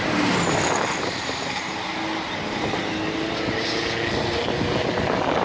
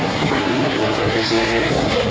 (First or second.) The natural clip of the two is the first